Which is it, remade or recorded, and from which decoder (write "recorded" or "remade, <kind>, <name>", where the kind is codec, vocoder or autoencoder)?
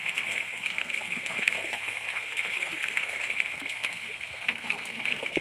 remade, codec, SNAC